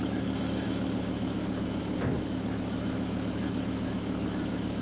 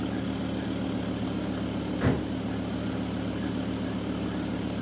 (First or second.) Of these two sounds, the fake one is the first